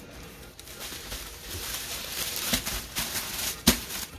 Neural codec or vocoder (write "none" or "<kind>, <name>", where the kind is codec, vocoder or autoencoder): vocoder, BigVGAN v2